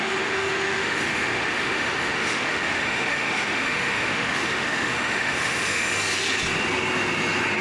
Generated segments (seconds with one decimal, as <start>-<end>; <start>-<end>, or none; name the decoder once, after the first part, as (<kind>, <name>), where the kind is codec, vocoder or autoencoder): 0.0-5.9 (autoencoder, DAC-VAE)